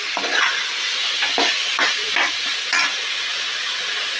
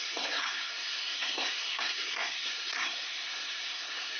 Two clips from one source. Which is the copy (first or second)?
second